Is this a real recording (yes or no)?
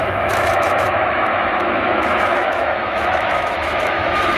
no